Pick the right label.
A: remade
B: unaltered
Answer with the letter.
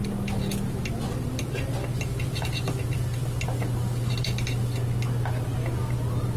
B